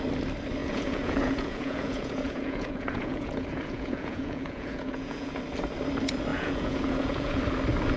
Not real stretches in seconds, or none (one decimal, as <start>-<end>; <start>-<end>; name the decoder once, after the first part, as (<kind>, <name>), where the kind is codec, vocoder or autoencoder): 0.6-5.4 (vocoder, Vocos); 6.3-7.4